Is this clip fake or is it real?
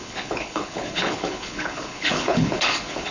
fake